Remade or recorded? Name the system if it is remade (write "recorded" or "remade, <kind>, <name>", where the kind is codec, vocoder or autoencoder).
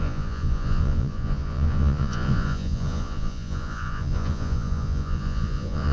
remade, vocoder, Vocos